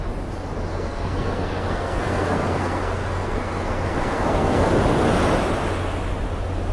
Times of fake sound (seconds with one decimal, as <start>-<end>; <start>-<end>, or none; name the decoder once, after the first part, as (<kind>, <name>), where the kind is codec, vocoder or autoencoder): 0.7-4.7 (codec, SNAC)